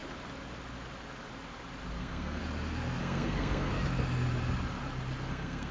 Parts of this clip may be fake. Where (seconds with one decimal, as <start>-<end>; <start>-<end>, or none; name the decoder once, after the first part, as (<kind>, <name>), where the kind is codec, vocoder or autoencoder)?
2.0-2.4 (codec, SNAC); 3.0-3.7; 5.3-5.7